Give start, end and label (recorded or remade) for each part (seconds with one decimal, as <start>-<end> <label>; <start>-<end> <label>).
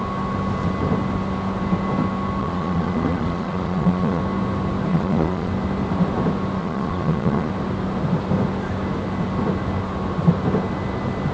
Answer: 0.0-2.4 recorded; 2.4-4.2 remade; 4.2-4.9 recorded; 4.9-5.5 remade; 5.5-6.6 recorded; 6.6-7.5 remade; 7.5-11.3 recorded